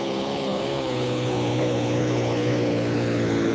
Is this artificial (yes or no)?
yes